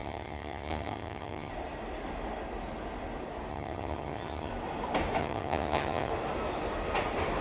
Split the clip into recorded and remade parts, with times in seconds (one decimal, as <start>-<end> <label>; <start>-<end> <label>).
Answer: 0.0-1.5 remade; 1.5-3.5 recorded; 3.5-4.5 remade; 4.5-5.2 recorded; 5.2-6.1 remade; 6.1-7.4 recorded